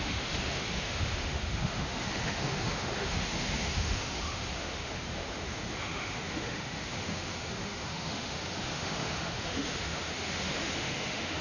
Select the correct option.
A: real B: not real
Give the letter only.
B